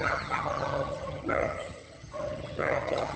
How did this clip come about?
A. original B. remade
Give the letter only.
B